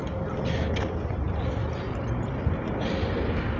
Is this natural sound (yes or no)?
yes